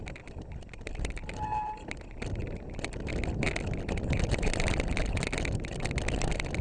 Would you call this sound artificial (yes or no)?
no